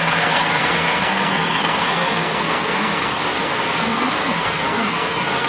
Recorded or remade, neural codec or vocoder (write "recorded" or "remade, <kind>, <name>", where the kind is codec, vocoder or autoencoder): remade, codec, SNAC